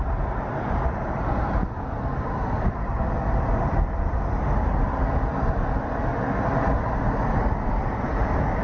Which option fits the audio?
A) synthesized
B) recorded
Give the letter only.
B